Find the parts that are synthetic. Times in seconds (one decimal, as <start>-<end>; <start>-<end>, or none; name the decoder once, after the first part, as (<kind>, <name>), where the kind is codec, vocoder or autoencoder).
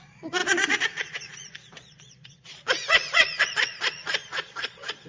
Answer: 0.0-5.1 (vocoder, Vocos)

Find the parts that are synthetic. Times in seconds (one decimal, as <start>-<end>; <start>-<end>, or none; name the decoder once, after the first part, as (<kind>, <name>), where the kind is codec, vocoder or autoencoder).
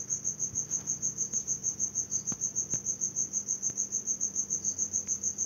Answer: none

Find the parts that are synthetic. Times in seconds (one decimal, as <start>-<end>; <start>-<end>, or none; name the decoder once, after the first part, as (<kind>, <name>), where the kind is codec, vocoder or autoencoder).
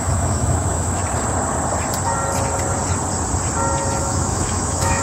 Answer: 0.0-1.0 (autoencoder, DAC-VAE); 4.0-5.0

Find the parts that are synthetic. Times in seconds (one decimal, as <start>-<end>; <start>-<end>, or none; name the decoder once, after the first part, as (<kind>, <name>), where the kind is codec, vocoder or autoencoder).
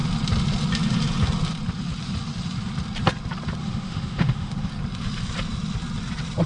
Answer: 3.6-4.7 (autoencoder, DAC-VAE)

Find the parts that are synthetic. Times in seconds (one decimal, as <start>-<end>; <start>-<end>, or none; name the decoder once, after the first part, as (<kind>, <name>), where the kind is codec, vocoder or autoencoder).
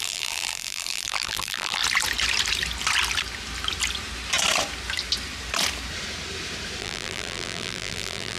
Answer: 0.0-1.8 (vocoder, BigVGAN v2); 6.8-8.4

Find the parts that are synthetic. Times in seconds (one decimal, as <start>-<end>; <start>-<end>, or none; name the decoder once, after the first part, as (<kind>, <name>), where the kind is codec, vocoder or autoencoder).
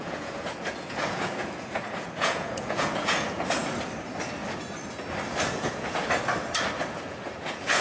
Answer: 0.0-3.6 (vocoder, Vocos); 5.5-6.0; 6.9-7.8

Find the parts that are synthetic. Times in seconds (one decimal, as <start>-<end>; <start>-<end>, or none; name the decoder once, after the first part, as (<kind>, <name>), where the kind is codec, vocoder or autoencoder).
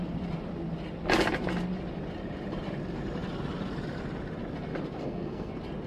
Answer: 5.0-5.5 (codec, SNAC)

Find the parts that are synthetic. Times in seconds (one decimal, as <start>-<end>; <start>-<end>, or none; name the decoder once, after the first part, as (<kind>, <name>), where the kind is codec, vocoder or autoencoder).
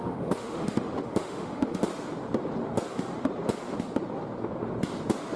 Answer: 0.0-1.9 (autoencoder, DAC-VAE)